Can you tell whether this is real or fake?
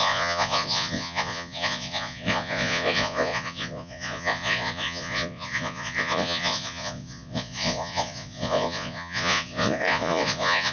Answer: fake